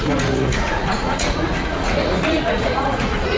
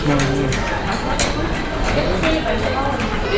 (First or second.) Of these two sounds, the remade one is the first